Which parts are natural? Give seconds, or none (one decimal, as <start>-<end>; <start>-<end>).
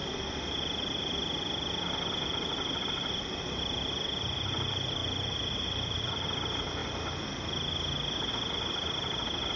0.0-0.8; 6.8-8.3